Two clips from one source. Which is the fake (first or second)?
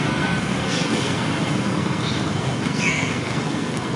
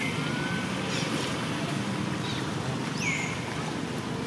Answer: first